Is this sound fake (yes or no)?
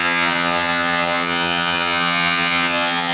yes